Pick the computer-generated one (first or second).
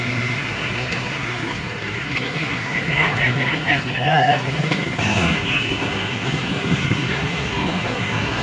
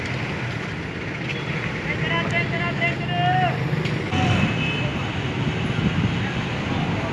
first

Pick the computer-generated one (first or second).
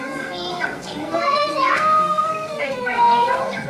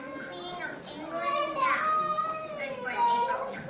first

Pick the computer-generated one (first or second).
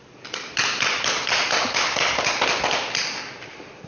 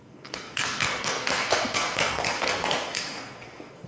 second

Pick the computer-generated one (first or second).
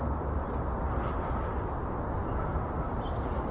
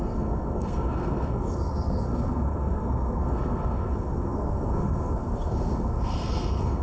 second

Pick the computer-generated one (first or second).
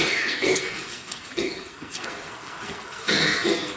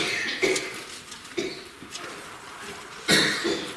first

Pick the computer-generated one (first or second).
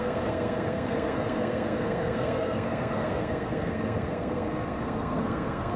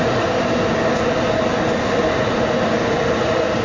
first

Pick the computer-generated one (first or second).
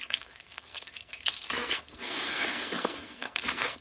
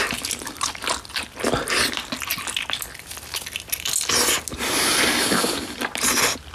first